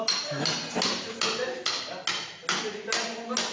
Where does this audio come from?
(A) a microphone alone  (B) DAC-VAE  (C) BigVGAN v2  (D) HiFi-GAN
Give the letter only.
A